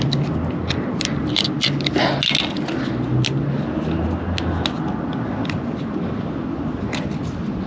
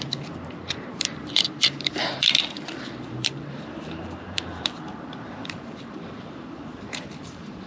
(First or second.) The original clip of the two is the first